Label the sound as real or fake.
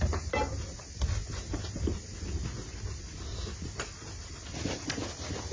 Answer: real